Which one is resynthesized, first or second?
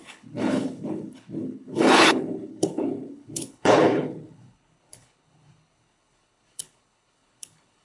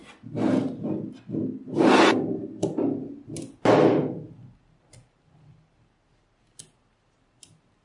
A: first